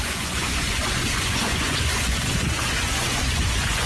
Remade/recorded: remade